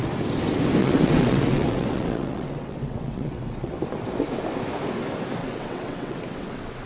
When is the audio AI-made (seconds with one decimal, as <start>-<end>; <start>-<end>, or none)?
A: 0.8-3.8; 5.4-6.9